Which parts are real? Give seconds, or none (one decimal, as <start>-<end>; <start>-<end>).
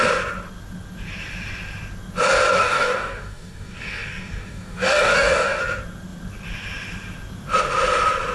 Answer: 0.0-2.5; 5.6-8.3